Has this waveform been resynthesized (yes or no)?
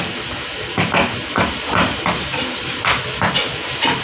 no